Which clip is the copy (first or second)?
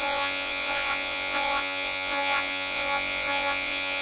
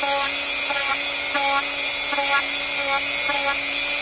first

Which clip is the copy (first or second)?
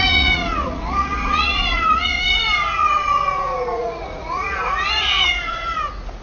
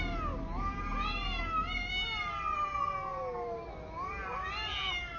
first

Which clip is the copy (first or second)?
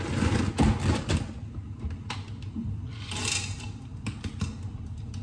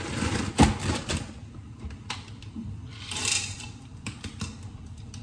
second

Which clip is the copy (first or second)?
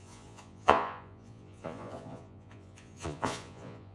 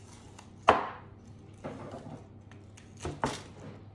first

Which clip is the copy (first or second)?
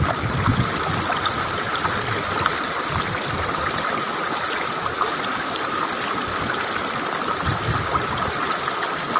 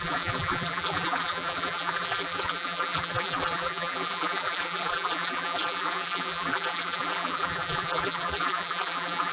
second